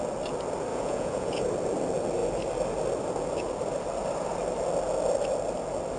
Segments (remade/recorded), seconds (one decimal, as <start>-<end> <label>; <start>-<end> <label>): 0.0-0.7 recorded; 0.7-1.4 remade; 1.4-6.0 recorded